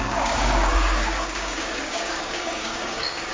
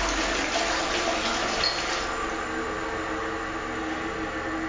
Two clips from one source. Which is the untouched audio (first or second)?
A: second